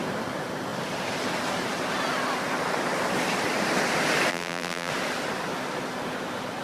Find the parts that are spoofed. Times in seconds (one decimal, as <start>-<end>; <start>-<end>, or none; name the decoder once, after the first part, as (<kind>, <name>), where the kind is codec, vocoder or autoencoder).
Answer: 4.3-4.9 (vocoder, BigVGAN v2)